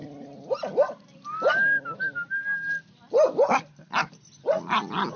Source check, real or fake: real